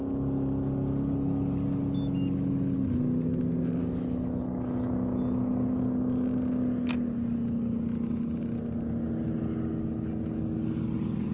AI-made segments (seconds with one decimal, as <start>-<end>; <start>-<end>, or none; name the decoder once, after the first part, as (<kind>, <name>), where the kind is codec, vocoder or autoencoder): 3.8-4.4 (autoencoder, DAC-VAE)